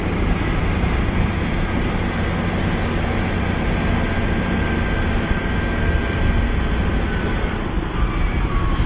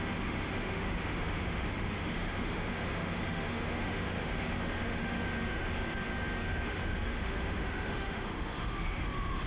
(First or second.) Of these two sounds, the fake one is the second